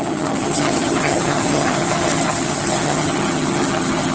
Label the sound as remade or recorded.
remade